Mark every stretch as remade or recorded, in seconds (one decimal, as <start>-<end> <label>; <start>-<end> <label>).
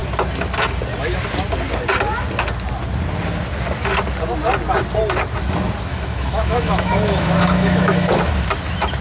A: 0.0-5.9 recorded; 5.9-8.1 remade; 8.1-9.0 recorded